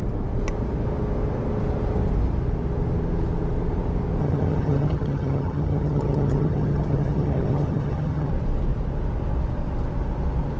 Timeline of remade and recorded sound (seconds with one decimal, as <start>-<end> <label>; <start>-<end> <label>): 0.0-4.2 recorded; 4.2-8.3 remade; 8.3-10.6 recorded